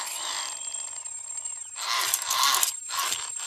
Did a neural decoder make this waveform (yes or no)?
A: no